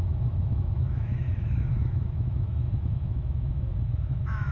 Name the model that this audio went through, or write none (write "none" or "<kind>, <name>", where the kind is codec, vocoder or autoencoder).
autoencoder, DAC-VAE